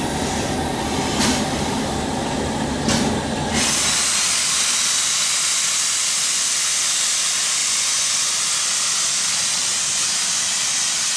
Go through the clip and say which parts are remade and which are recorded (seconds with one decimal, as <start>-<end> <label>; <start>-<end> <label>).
0.0-7.6 recorded; 7.6-8.1 remade; 8.1-11.2 recorded